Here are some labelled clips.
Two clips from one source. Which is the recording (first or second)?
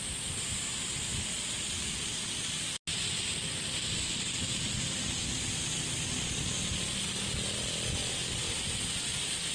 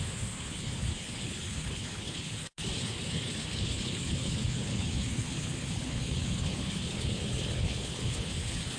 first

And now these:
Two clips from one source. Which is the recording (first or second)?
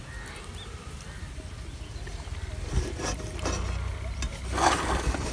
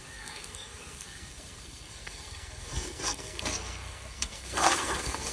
first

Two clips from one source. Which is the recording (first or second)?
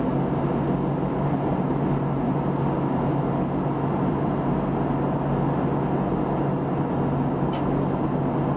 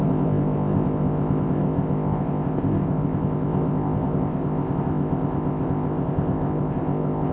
first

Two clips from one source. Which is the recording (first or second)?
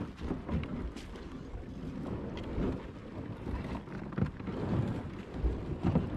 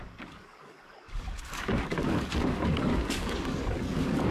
first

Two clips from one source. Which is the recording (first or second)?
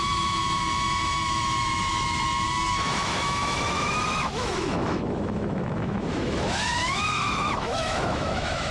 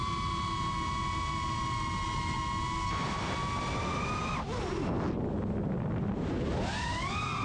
second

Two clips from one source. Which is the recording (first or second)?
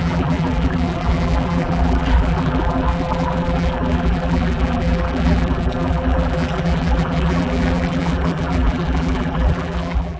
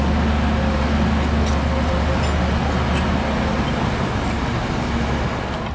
second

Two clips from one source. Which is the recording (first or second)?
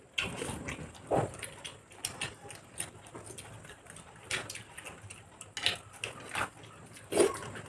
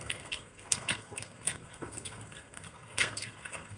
first